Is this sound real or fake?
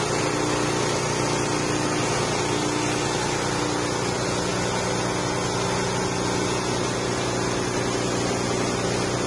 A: real